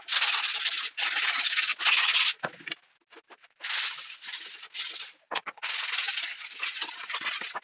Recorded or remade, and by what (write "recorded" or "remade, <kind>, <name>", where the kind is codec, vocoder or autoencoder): recorded